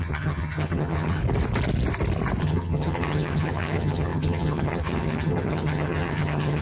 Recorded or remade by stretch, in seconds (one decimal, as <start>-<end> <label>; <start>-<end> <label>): 0.0-1.2 remade; 1.2-2.4 recorded; 2.4-6.6 remade